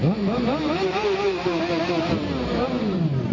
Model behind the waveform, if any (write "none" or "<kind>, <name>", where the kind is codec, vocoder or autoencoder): vocoder, BigVGAN v2